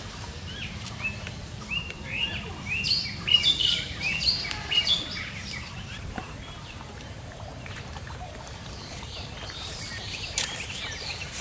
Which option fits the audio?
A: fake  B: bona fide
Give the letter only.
A